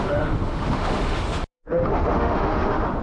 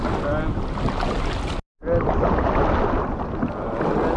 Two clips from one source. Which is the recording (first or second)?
second